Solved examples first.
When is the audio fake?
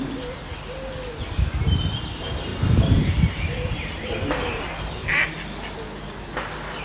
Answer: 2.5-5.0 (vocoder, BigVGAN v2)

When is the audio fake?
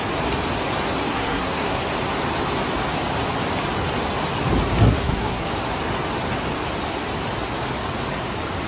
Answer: 1.1-1.8 (codec, SNAC); 4.8-5.5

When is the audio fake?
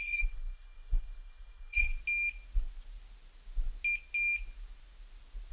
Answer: 0.0-1.9 (codec, SNAC)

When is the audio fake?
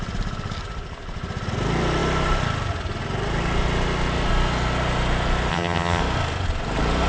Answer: 5.5-6.0 (vocoder, HiFi-GAN)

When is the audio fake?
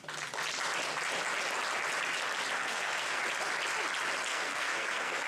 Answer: 2.6-3.2 (codec, SNAC); 4.3-5.3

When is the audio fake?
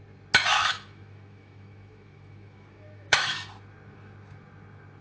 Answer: 0.5-3.5 (autoencoder, DAC-VAE)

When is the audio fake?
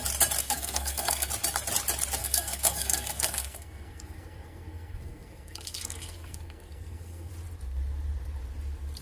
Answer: 0.4-1.3 (codec, SNAC); 2.2-7.3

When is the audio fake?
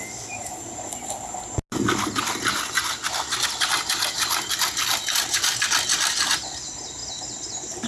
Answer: none